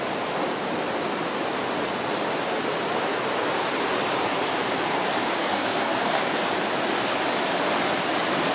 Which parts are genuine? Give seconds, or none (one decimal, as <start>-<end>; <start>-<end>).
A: 0.0-5.4; 6.4-8.5